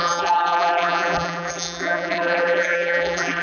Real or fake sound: fake